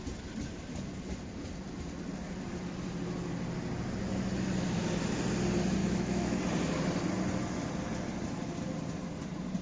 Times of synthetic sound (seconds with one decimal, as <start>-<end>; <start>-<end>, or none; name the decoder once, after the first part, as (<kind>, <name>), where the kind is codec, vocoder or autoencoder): 5.8-6.4 (autoencoder, DAC-VAE)